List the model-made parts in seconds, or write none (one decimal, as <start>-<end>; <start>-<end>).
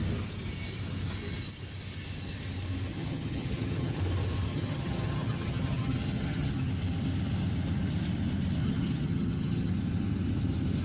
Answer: 2.9-4.0; 4.5-6.7; 8.6-9.7